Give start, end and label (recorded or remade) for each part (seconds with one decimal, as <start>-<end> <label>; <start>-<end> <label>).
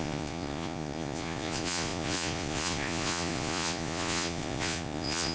0.0-5.3 remade